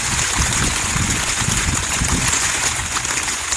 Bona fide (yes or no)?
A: no